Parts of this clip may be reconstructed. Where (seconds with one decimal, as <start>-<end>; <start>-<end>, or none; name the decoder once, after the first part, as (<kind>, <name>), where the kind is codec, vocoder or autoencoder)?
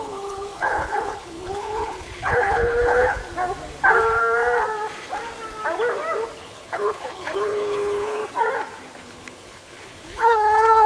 0.0-3.2 (codec, HILCodec); 6.4-8.2; 9.0-10.9